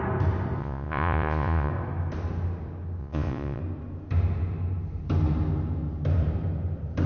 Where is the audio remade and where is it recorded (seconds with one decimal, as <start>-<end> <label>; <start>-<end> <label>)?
0.0-0.6 recorded; 0.6-1.7 remade; 1.7-3.0 recorded; 3.0-3.6 remade; 3.6-7.1 recorded